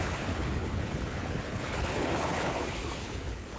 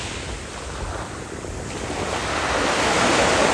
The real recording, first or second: second